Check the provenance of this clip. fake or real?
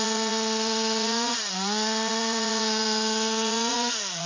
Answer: fake